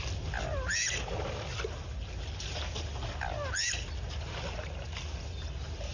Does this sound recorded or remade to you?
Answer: recorded